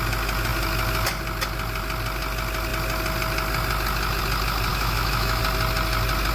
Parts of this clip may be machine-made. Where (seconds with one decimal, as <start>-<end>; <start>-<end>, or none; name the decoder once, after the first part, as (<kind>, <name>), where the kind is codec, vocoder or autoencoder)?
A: 4.7-5.4 (autoencoder, DAC-VAE)